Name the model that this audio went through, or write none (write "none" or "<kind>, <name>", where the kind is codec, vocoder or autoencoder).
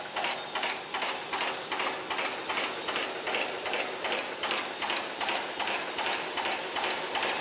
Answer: none